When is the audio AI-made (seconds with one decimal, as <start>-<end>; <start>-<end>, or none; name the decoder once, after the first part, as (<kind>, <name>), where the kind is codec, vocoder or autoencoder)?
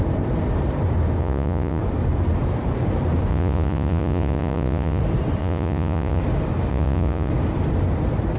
1.2-1.8 (vocoder, Vocos); 3.3-5.0; 5.4-6.2; 6.7-7.3